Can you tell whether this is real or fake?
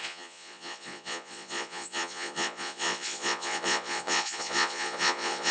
fake